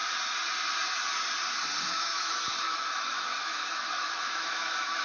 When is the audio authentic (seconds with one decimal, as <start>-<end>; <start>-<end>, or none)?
0.0-1.8